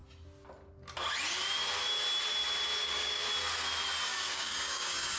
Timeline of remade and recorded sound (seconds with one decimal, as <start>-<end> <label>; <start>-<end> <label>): 0.0-2.8 recorded; 2.8-3.3 remade; 3.3-4.1 recorded; 4.1-5.2 remade